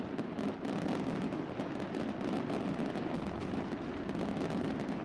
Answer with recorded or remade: recorded